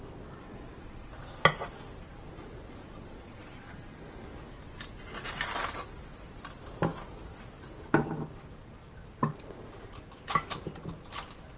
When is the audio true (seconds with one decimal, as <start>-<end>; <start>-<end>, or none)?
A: 0.0-0.4; 1.1-2.8; 3.9-11.6